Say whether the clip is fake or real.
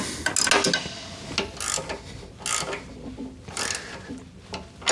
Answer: real